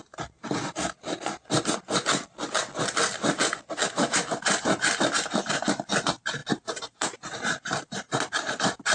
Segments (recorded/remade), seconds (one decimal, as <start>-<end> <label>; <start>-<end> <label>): 0.0-6.4 recorded; 6.4-8.0 remade; 8.0-8.9 recorded